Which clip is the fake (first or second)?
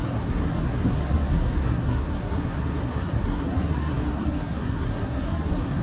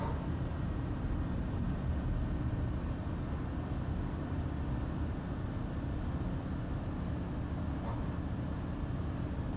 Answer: first